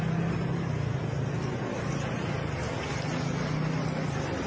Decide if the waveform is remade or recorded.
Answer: recorded